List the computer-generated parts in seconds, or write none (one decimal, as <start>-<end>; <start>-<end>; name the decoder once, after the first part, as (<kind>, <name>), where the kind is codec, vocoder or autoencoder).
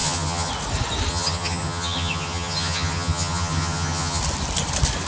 0.0-0.5 (vocoder, HiFi-GAN); 1.1-4.2